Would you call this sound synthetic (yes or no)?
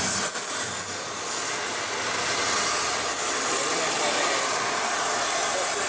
no